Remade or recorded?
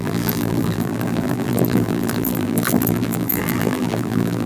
remade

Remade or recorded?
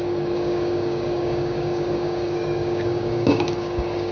remade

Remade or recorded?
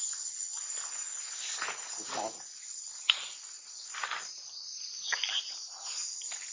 recorded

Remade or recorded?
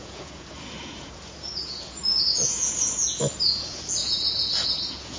remade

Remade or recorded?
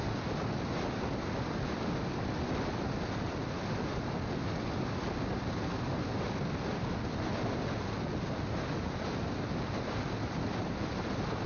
recorded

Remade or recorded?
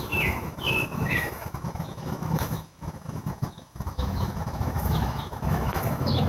remade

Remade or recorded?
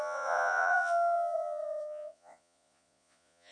remade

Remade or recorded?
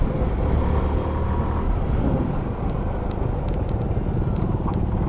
recorded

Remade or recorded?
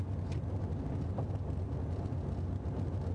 recorded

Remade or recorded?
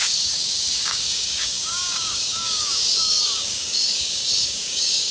remade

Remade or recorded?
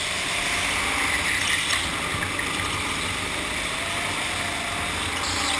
recorded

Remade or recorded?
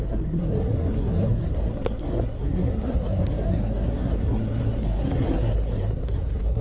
remade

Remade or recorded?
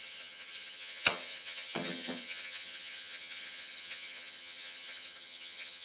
remade